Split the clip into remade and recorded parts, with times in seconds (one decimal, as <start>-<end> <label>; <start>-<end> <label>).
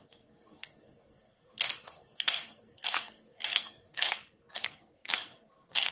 0.0-5.9 remade